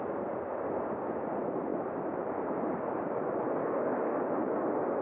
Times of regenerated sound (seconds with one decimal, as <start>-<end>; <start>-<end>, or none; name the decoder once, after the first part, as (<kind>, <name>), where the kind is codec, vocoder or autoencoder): 3.6-4.3 (codec, DAC)